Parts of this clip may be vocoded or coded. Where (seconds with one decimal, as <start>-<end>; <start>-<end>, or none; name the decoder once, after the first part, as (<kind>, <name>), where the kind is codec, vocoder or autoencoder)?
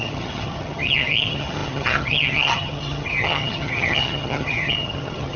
0.0-5.4 (vocoder, HiFi-GAN)